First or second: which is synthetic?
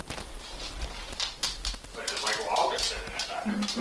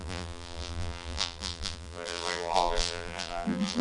second